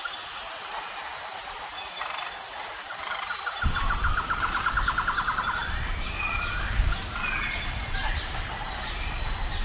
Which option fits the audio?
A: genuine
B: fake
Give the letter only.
A